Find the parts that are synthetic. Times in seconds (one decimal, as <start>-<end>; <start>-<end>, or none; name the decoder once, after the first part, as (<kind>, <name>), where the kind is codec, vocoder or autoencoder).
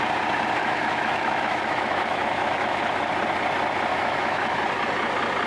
0.6-2.8 (autoencoder, DAC-VAE); 3.9-4.6